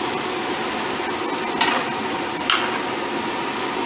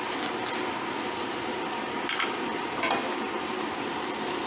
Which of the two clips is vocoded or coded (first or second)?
second